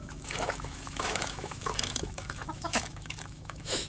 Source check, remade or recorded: remade